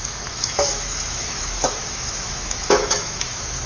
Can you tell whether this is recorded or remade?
remade